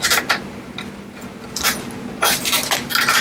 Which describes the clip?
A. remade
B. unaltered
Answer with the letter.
B